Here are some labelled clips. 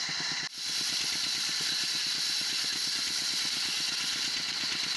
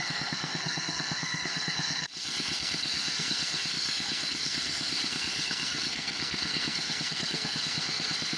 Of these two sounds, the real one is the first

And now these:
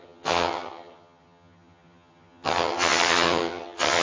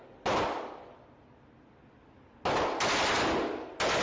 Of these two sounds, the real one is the second